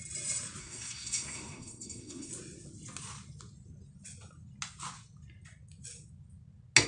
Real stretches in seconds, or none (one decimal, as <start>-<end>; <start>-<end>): 0.0-0.6; 2.3-6.9